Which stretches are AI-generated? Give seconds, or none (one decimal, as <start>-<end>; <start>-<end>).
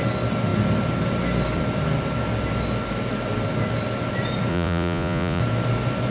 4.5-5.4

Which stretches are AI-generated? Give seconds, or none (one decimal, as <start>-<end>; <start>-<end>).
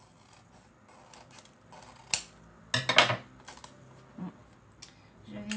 none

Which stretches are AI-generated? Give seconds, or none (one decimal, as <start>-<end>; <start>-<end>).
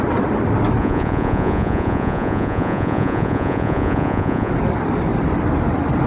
0.8-4.5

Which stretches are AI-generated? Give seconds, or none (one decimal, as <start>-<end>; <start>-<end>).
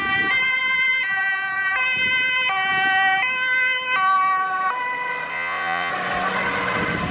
5.3-5.9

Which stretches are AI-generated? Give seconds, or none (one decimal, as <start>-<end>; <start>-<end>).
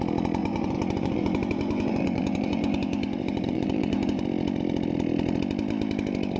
0.4-4.2